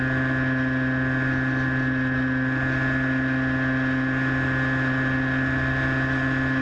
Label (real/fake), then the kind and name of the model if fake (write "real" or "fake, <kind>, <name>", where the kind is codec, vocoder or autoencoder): real